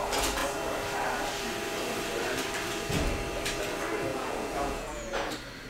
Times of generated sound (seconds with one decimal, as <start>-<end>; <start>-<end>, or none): 4.1-5.3